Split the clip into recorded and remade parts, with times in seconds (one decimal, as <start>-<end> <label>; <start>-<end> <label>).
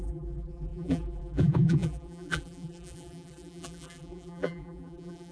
0.0-5.3 remade